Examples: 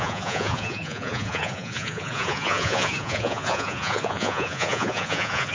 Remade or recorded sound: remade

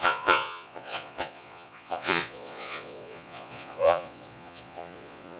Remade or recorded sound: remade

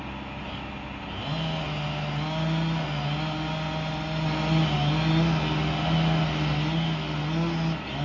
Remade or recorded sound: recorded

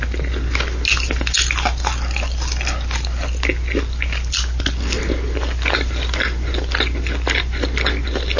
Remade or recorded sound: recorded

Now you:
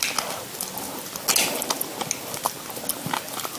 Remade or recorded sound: recorded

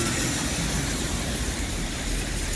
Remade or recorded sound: recorded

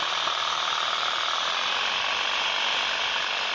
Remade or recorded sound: recorded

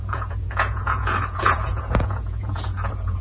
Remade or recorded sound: remade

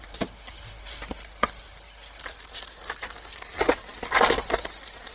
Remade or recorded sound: recorded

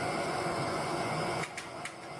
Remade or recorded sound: remade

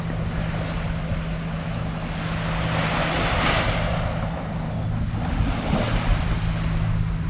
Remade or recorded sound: recorded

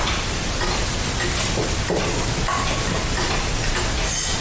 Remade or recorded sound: recorded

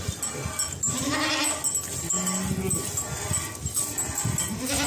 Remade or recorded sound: recorded